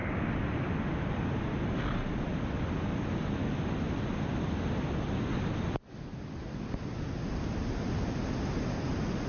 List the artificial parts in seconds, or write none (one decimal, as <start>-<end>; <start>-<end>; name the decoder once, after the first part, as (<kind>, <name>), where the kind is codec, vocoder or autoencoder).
none